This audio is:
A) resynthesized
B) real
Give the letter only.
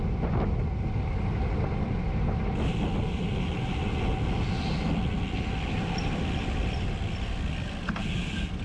B